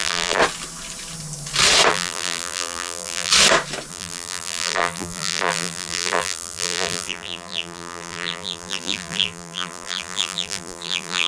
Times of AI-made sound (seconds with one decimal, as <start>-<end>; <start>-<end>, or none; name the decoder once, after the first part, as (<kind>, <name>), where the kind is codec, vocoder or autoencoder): 0.0-0.4 (vocoder, BigVGAN v2); 1.9-3.3; 3.9-11.3